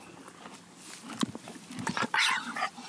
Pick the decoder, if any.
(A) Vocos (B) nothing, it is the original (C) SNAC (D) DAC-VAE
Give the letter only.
B